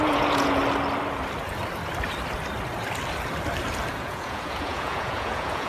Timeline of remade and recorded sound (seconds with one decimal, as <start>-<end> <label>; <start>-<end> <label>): 0.0-0.6 remade; 0.6-3.9 recorded; 3.9-5.7 remade